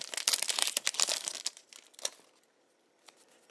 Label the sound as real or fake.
real